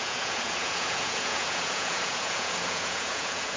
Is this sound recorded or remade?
remade